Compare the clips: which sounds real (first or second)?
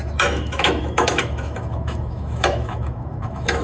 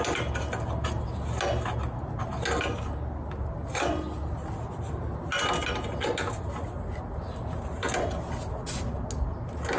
second